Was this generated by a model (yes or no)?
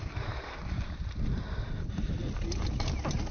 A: no